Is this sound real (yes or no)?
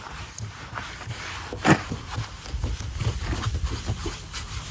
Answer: yes